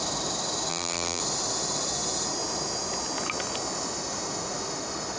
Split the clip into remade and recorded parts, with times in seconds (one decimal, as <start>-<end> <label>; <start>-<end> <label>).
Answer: 0.0-0.7 recorded; 0.7-1.2 remade; 1.2-5.2 recorded